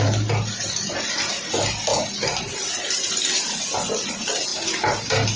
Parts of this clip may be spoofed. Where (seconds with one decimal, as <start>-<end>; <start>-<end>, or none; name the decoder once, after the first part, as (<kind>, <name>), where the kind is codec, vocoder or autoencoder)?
1.9-2.9 (vocoder, BigVGAN v2)